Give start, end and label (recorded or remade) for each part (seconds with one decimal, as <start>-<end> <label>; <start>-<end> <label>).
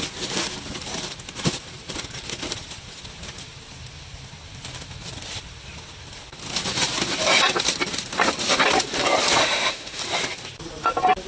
0.0-9.4 recorded; 9.4-10.0 remade; 10.0-11.3 recorded